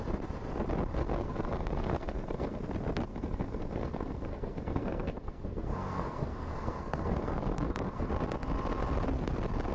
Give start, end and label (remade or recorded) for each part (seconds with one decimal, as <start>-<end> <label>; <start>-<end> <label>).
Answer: 0.0-1.0 recorded; 1.0-2.6 remade; 2.6-3.1 recorded; 3.1-8.1 remade; 8.1-9.7 recorded